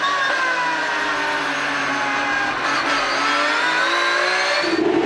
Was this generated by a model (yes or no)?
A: no